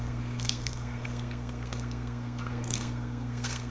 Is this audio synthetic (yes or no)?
yes